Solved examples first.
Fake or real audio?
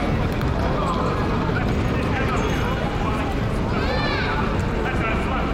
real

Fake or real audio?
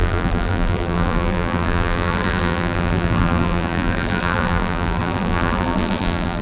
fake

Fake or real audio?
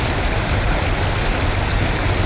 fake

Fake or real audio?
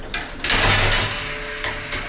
real